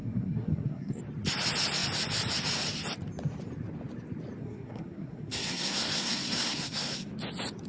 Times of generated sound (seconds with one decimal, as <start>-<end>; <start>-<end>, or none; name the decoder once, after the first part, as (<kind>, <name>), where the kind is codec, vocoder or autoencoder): 0.0-1.0 (codec, SNAC); 4.4-7.1